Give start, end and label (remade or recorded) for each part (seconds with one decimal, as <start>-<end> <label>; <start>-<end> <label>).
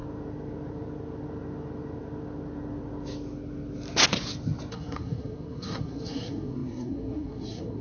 0.0-4.7 recorded; 4.7-7.8 remade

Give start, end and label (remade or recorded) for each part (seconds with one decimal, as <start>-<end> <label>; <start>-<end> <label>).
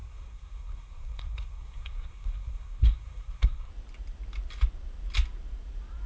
0.0-3.7 remade; 3.7-6.1 recorded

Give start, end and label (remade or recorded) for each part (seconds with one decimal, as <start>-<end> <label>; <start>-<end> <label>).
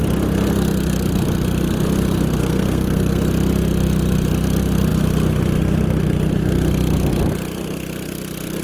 0.0-2.4 recorded; 2.4-3.2 remade; 3.2-8.6 recorded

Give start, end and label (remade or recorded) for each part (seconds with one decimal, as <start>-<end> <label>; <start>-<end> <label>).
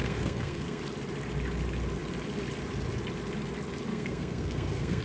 0.0-0.8 remade; 0.8-3.9 recorded; 3.9-5.0 remade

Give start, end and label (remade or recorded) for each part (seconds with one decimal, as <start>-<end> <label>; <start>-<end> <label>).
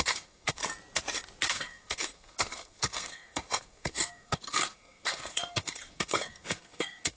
0.0-0.6 remade; 0.6-1.5 recorded; 1.5-7.2 remade